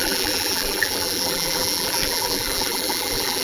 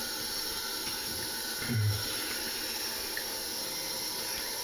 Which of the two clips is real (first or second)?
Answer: second